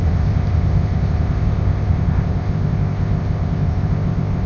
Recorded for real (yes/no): no